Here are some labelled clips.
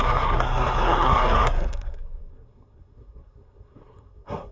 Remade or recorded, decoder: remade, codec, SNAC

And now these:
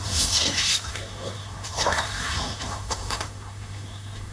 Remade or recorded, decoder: remade, codec, SNAC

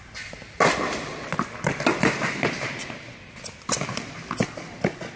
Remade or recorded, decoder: recorded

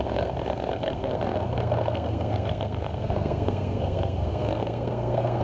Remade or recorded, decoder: remade, codec, SNAC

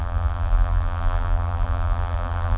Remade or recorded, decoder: remade, vocoder, BigVGAN v2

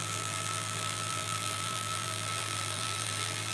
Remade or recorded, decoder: remade, vocoder, BigVGAN v2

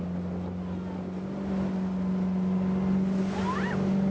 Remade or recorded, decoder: recorded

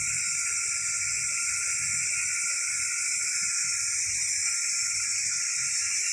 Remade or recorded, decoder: recorded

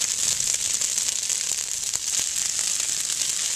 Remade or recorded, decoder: recorded